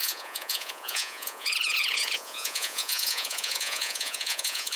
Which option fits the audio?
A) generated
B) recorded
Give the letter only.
A